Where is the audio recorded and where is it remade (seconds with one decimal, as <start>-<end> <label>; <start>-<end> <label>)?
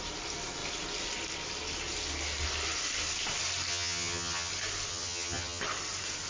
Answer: 0.0-3.7 recorded; 3.7-4.5 remade; 4.5-4.9 recorded; 4.9-5.6 remade; 5.6-6.3 recorded